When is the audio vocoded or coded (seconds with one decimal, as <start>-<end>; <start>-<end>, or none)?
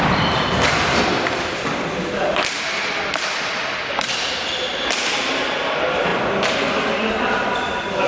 4.7-5.3